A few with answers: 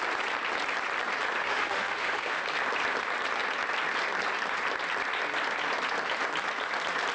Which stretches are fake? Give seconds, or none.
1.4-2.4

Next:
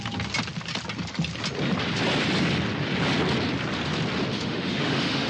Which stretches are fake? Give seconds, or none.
4.3-5.3

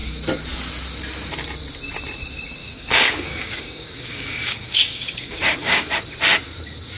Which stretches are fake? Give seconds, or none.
2.6-5.9

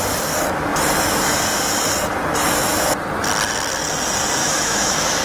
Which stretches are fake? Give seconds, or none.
4.4-5.2

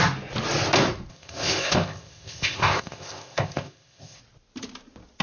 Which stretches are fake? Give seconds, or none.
1.1-4.2

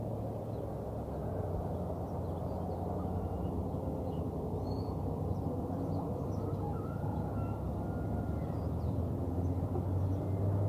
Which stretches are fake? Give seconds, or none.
none

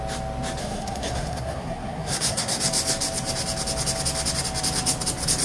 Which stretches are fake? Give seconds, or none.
0.6-2.6